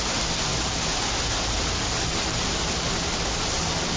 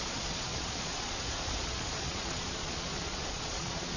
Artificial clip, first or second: second